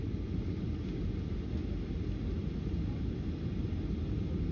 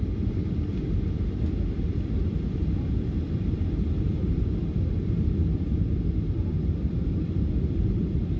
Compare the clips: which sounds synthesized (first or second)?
second